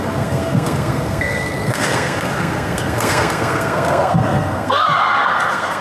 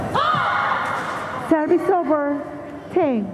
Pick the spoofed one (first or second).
first